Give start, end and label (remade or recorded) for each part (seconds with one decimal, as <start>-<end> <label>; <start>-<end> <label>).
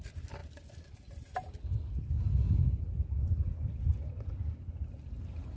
0.0-5.6 recorded